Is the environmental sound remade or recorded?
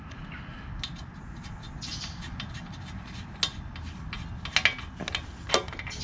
recorded